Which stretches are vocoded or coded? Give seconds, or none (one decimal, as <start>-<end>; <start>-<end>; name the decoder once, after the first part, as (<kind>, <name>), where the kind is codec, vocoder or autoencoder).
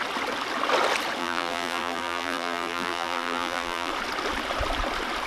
1.2-3.9 (vocoder, BigVGAN v2)